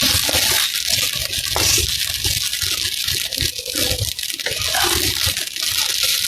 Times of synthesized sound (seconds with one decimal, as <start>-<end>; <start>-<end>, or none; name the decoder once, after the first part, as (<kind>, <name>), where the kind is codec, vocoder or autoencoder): none

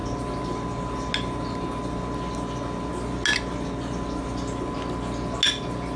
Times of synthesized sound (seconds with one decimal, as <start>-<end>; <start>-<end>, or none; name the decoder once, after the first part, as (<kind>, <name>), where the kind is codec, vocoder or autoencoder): none

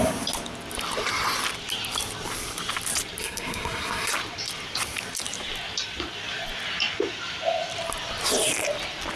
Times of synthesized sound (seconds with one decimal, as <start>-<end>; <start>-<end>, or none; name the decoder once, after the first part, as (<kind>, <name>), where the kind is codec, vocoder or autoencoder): 3.2-4.1 (codec, SNAC)

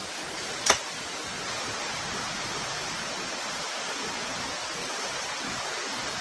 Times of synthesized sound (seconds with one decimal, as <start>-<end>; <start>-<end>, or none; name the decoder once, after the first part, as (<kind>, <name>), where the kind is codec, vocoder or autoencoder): 4.8-5.4 (vocoder, WaveNeXt)